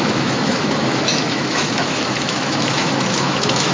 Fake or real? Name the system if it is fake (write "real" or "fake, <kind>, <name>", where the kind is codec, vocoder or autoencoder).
fake, autoencoder, DAC-VAE